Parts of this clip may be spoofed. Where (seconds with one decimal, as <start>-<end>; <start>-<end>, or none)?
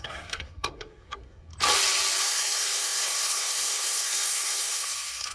0.0-1.5; 2.2-5.3